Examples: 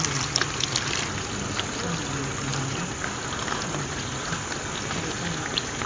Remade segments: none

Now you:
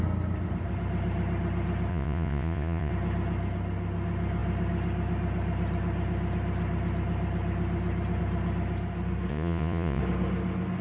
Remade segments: 1.9-2.9 (vocoder, Vocos); 9.3-10.0

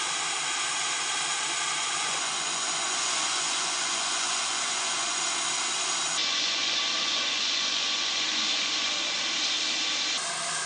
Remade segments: 1.8-5.2 (vocoder, Vocos); 6.2-9.2

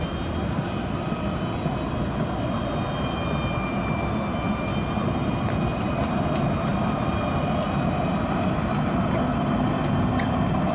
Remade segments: none

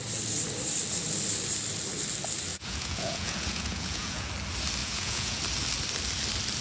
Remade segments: 2.5-4.3 (vocoder, Vocos); 4.8-5.4

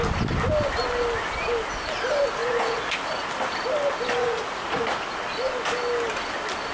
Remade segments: 2.4-3.3 (vocoder, Vocos); 4.2-4.8

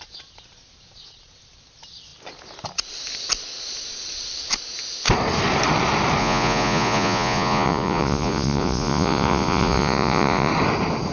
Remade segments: 6.2-10.5 (vocoder, Vocos)

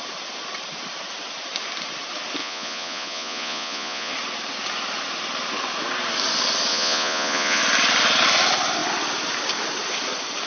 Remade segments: 2.4-4.1 (vocoder, Vocos); 6.7-7.6